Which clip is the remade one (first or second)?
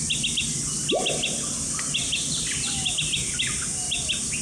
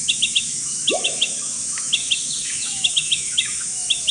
second